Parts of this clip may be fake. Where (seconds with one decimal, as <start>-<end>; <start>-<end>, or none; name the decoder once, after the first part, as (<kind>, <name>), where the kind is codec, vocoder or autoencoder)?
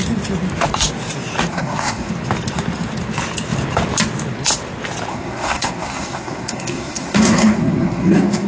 1.5-2.1 (codec, SNAC); 5.1-8.5